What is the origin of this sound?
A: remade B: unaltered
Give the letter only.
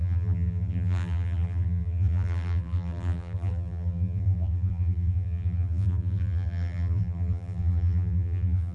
A